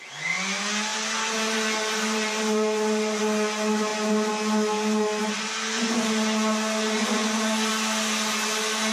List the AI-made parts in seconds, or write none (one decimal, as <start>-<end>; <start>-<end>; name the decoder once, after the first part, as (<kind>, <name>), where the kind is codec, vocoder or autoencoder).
0.9-3.2 (vocoder, BigVGAN v2)